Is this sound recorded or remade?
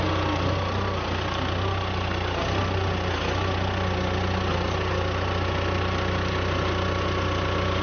recorded